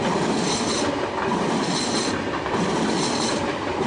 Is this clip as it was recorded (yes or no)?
yes